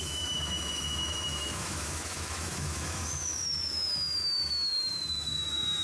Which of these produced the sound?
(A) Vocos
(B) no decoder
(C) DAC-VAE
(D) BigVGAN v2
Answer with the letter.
C